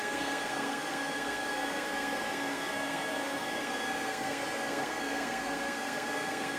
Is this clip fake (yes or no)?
yes